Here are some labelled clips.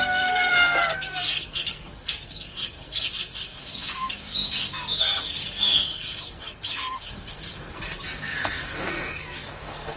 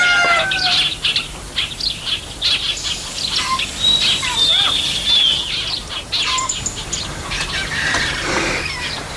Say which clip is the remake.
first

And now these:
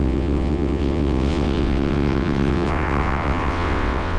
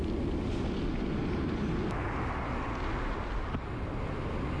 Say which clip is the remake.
first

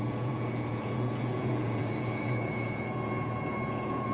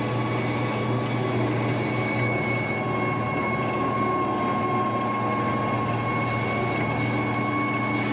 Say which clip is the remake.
first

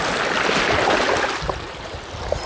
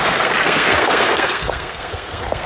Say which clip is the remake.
second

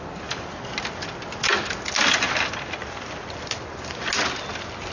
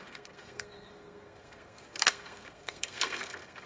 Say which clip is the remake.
second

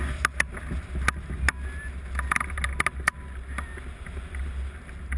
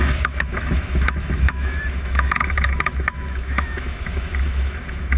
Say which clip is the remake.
second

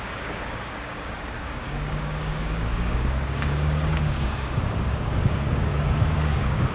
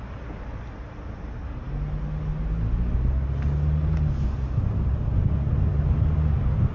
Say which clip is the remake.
first